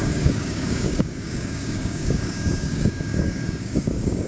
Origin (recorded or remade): remade